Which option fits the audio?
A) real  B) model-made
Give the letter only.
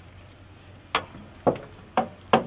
A